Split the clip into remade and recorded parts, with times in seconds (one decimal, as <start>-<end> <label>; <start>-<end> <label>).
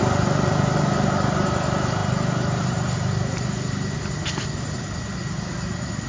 0.0-6.1 recorded